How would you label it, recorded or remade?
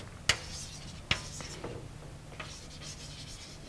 recorded